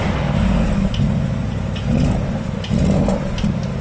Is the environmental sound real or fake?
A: real